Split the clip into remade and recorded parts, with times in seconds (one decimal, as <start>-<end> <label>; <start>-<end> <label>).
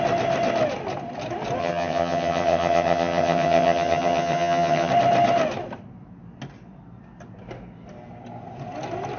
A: 0.0-1.6 recorded; 1.6-4.9 remade; 4.9-9.2 recorded